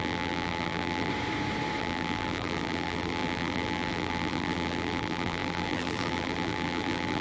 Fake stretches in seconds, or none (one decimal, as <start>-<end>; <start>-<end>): 0.0-1.1; 1.8-7.2

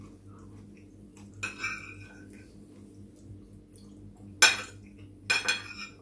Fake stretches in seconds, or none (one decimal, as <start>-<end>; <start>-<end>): none

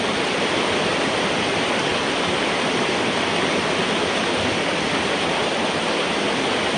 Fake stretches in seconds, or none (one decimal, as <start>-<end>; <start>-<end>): none

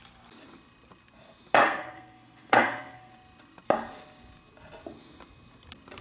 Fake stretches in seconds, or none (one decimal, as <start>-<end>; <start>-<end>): 1.6-3.1

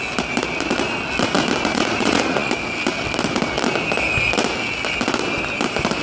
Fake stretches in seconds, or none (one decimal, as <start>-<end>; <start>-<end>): 1.7-2.5

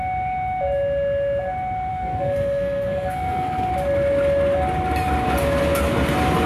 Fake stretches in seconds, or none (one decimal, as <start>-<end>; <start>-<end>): 1.9-3.7

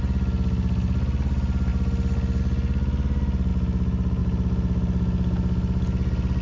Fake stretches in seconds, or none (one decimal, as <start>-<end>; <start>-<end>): none